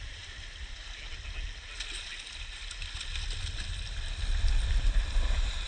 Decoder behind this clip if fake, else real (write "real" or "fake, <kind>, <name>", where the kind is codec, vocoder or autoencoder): real